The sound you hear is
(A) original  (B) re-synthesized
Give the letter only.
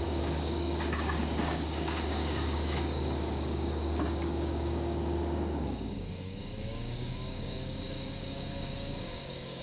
B